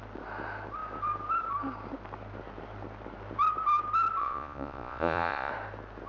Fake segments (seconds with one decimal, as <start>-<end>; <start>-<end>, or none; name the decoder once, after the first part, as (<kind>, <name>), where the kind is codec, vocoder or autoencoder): 4.2-5.5 (vocoder, Vocos)